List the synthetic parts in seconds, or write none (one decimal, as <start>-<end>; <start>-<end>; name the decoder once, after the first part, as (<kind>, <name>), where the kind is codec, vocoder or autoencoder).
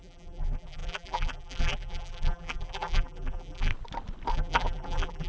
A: 0.0-3.7 (vocoder, BigVGAN v2); 4.3-5.3